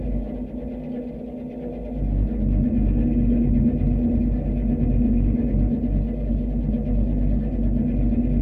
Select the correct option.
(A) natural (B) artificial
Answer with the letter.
A